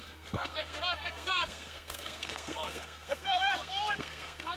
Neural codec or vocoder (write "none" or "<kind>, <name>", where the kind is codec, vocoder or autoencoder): codec, SNAC